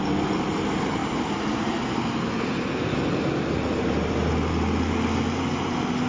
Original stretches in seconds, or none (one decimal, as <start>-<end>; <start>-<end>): 0.0-6.1